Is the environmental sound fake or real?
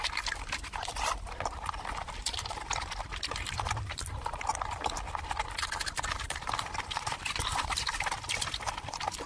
fake